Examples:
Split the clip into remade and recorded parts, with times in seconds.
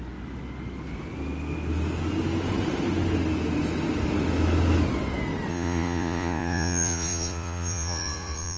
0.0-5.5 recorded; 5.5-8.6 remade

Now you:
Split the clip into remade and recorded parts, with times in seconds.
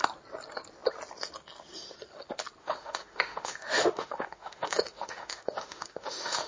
0.0-2.6 recorded; 2.6-6.5 remade